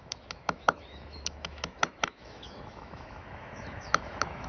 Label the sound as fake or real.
fake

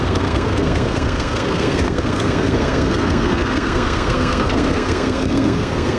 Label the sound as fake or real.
fake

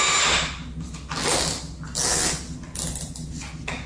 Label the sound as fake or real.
real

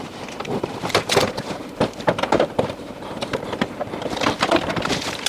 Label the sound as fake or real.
fake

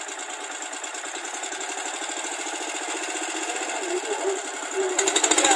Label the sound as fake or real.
real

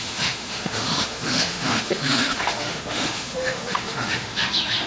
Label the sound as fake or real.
fake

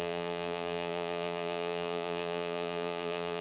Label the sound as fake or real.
fake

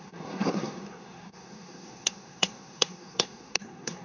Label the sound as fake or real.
fake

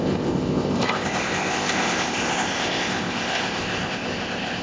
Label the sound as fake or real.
fake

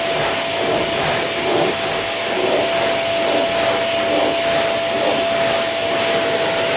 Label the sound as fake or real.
real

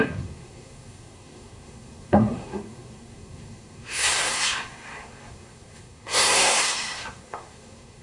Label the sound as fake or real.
fake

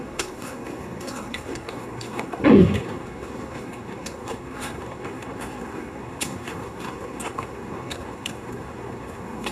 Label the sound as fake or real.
fake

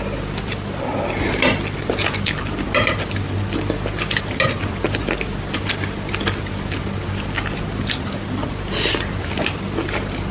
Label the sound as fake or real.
real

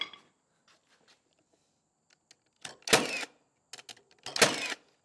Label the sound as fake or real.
real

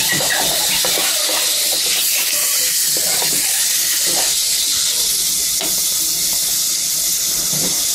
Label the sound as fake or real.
real